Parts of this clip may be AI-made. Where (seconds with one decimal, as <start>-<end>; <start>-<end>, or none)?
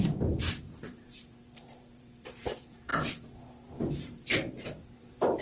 0.0-2.9; 3.9-4.3; 5.0-5.4